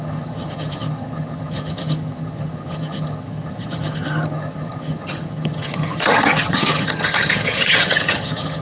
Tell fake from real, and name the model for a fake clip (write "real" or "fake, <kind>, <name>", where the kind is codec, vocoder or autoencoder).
fake, vocoder, HiFi-GAN